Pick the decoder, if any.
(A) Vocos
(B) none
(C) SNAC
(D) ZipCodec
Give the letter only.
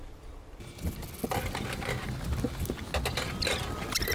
B